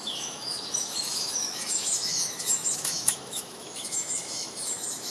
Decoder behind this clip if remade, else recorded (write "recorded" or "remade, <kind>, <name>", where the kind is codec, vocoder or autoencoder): remade, autoencoder, DAC-VAE